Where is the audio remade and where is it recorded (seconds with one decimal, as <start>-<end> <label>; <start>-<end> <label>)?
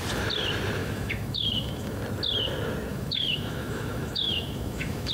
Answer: 0.0-0.8 recorded; 0.8-2.0 remade; 2.0-2.9 recorded; 2.9-5.1 remade